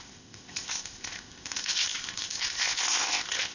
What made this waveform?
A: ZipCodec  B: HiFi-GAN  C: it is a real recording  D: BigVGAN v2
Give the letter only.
A